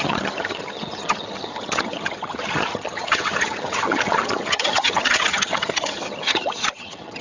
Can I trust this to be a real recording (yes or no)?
no